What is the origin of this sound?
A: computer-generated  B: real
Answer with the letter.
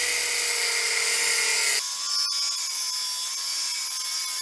B